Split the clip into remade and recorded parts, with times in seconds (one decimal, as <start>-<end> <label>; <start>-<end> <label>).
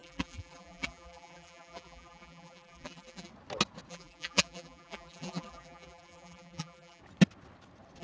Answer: 0.0-3.3 remade; 3.3-3.9 recorded; 3.9-7.0 remade; 7.0-8.0 recorded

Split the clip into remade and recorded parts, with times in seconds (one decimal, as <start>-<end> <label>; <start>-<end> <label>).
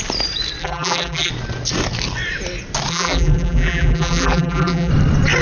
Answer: 0.0-0.6 recorded; 0.6-1.3 remade; 1.3-2.9 recorded; 2.9-4.9 remade; 4.9-5.4 recorded